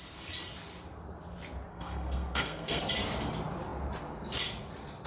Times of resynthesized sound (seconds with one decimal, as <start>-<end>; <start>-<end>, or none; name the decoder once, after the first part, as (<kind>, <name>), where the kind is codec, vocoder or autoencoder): 1.7-2.8 (codec, SNAC)